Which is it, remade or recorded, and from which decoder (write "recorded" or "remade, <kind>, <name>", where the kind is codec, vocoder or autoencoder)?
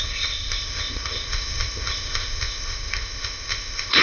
remade, codec, ZipCodec